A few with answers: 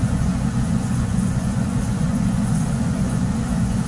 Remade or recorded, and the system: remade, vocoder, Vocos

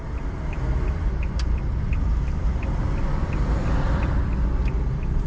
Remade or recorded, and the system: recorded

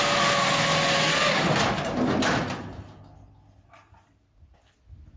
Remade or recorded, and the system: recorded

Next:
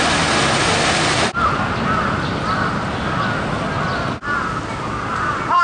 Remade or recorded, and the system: recorded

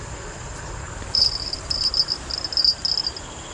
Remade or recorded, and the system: recorded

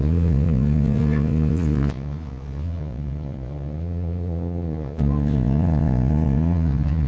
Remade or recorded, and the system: remade, vocoder, Vocos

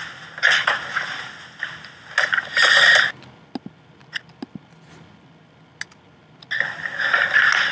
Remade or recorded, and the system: recorded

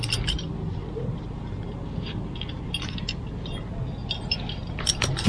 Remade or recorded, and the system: recorded